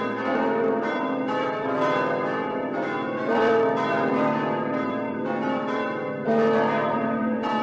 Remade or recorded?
remade